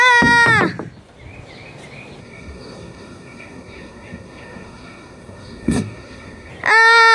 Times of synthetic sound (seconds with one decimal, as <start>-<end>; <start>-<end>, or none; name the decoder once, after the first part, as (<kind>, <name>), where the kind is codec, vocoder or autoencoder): 2.2-6.5 (codec, SNAC)